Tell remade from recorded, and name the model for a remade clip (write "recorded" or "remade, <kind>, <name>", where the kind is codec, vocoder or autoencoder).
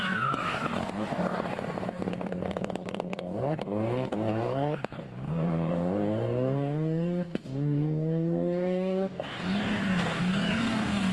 remade, codec, DAC